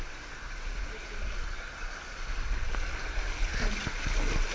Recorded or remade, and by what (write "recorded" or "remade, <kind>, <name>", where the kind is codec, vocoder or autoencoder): recorded